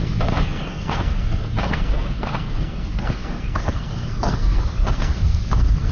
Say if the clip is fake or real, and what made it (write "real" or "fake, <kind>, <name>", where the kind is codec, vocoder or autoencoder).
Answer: fake, codec, SNAC